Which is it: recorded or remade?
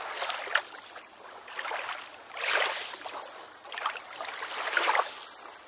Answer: recorded